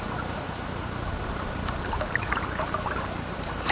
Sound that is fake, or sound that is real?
fake